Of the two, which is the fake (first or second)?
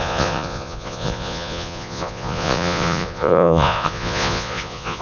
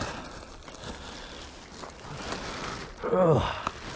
first